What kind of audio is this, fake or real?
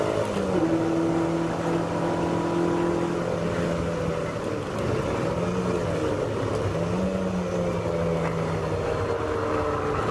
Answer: real